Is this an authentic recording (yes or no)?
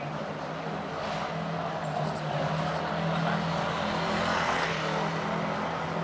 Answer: yes